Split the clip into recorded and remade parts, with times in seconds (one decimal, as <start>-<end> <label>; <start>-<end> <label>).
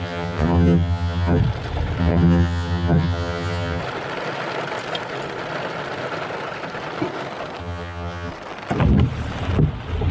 0.0-1.4 remade; 1.4-2.0 recorded; 2.0-3.8 remade; 3.8-7.6 recorded; 7.6-8.3 remade; 8.3-10.1 recorded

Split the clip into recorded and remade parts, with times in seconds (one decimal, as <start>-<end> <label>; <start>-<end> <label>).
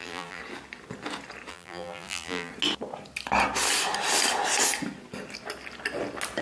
0.0-0.4 remade; 0.4-1.5 recorded; 1.5-2.5 remade; 2.5-6.4 recorded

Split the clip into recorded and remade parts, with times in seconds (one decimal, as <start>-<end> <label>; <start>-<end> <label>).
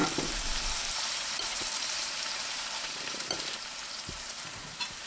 0.0-0.9 recorded; 0.9-5.1 remade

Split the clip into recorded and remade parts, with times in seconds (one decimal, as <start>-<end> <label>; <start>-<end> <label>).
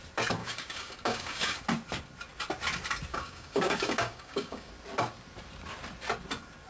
0.0-0.4 recorded; 0.4-1.6 remade; 1.6-3.1 recorded; 3.1-4.7 remade; 4.7-6.7 recorded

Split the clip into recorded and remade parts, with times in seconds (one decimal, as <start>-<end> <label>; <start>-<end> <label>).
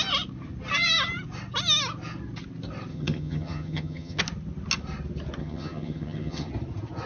0.0-2.9 recorded; 2.9-4.2 remade; 4.2-5.4 recorded; 5.4-6.5 remade; 6.5-7.1 recorded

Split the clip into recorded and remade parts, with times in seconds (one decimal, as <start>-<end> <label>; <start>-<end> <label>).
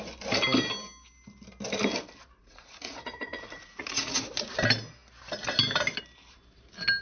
0.0-2.4 recorded; 2.4-4.3 remade; 4.3-7.0 recorded